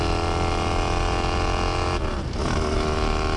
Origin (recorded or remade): recorded